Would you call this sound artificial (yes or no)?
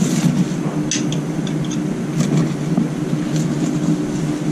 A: no